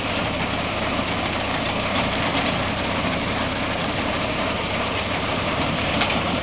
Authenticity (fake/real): fake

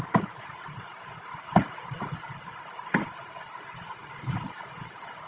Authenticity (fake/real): fake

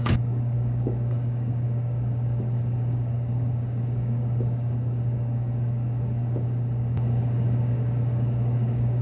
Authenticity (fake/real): fake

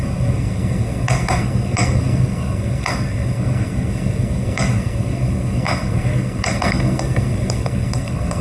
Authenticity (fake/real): fake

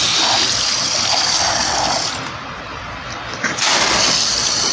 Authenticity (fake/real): real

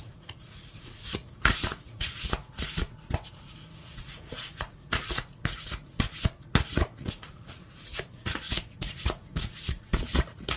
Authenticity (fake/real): fake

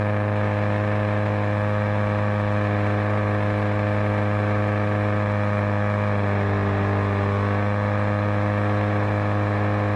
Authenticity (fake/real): real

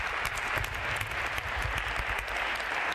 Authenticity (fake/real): real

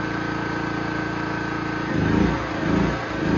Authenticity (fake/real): real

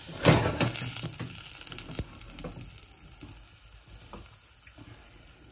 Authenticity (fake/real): real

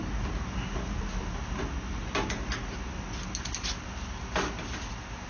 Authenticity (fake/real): real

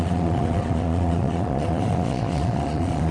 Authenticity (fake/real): fake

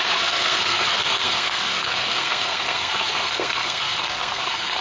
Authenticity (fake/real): fake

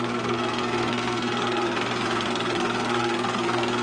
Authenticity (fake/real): fake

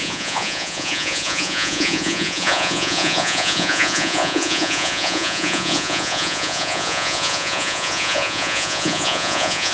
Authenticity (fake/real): fake